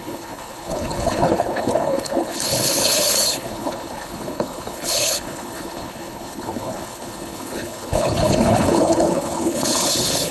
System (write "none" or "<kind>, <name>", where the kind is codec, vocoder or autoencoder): codec, HILCodec